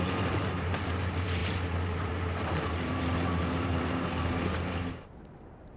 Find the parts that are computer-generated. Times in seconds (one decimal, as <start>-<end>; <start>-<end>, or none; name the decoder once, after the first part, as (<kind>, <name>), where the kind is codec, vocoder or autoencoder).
0.0-5.8 (vocoder, BigVGAN v2)